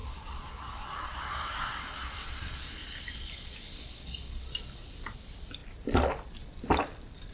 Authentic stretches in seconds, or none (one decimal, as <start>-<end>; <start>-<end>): 0.6-1.1; 3.5-5.6; 6.8-7.3